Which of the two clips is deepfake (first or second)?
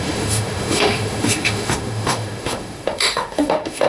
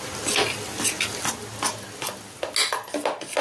first